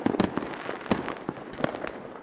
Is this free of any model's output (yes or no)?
yes